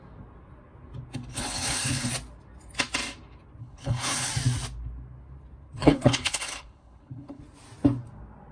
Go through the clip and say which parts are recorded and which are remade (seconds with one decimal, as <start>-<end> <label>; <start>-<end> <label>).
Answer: 0.0-1.3 recorded; 1.3-2.1 remade; 2.1-3.6 recorded; 3.6-4.3 remade; 4.3-5.8 recorded; 5.8-7.4 remade; 7.4-8.5 recorded